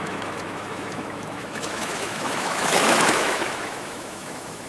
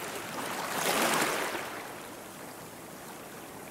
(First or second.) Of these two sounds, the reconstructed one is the first